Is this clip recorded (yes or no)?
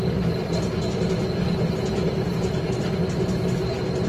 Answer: yes